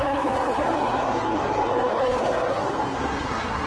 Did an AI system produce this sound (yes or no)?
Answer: yes